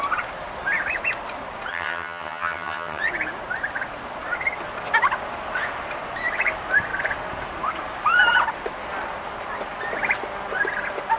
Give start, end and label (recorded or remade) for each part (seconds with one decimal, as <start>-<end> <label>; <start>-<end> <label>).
0.0-1.7 recorded; 1.7-3.0 remade; 3.0-11.2 recorded